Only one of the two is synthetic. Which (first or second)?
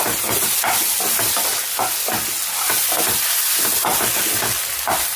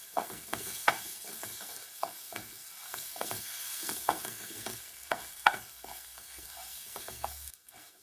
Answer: second